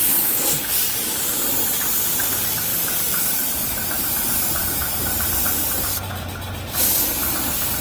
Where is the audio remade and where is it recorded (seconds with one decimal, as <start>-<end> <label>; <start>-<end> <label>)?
0.0-2.7 recorded; 2.7-6.9 remade; 6.9-7.8 recorded